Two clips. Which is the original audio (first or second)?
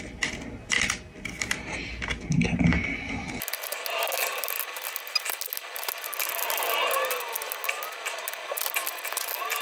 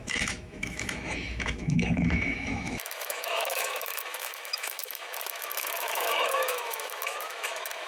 first